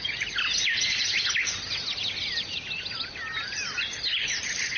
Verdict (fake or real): real